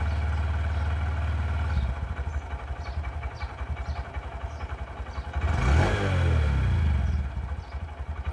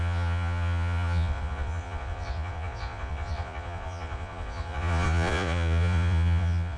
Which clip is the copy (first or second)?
second